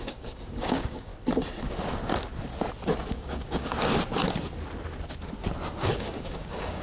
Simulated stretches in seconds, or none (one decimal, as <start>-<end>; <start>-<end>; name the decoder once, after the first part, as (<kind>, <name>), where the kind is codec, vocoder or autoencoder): 0.0-1.1 (codec, DAC); 3.1-3.7; 5.8-6.8